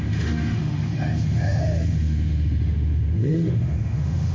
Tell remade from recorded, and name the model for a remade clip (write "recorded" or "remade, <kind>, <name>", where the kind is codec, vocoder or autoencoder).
remade, autoencoder, DAC-VAE